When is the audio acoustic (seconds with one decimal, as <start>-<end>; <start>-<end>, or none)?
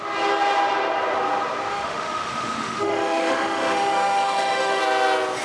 0.0-1.7; 4.8-5.4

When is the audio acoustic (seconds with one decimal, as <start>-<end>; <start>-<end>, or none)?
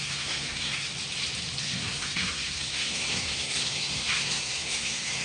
0.9-1.6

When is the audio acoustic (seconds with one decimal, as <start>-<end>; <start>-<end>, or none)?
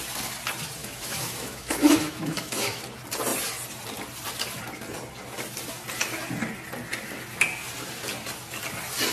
0.0-0.8; 2.8-9.1